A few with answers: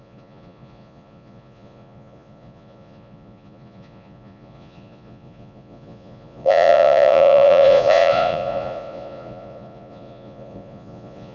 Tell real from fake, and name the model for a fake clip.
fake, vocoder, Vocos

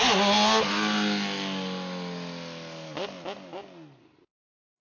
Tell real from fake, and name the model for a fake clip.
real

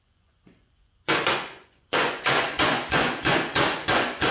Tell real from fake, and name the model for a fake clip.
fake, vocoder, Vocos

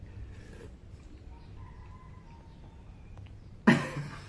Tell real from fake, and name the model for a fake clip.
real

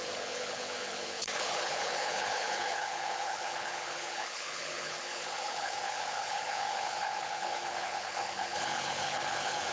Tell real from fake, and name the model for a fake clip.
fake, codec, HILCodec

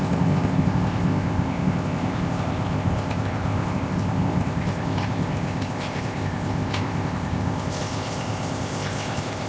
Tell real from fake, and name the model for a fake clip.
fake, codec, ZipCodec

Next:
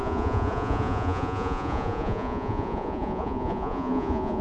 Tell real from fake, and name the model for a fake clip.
fake, vocoder, Vocos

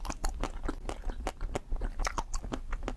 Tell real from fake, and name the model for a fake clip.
real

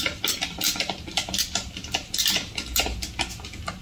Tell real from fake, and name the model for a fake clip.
real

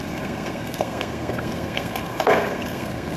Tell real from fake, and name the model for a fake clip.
fake, codec, SNAC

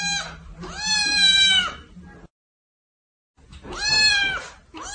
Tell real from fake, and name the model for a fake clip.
real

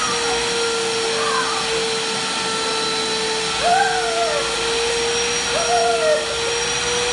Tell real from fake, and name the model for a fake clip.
real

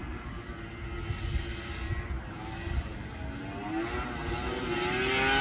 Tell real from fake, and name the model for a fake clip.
real